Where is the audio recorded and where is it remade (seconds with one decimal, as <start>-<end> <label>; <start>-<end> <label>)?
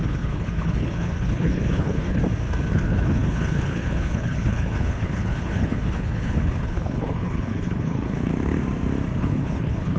0.0-2.2 remade; 2.2-2.7 recorded; 2.7-8.3 remade; 8.3-9.2 recorded; 9.2-10.0 remade